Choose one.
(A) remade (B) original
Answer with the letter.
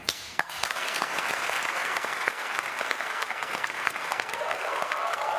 A